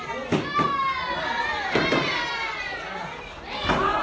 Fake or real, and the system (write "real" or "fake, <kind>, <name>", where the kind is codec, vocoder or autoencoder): real